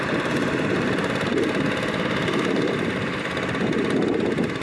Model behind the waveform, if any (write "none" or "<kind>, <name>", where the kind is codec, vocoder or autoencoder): none